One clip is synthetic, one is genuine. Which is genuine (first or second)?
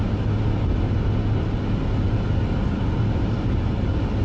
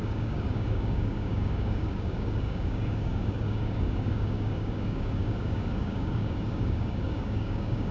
first